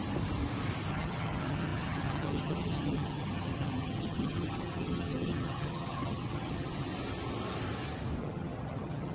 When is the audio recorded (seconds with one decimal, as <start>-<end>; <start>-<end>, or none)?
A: 0.0-0.9; 6.9-8.2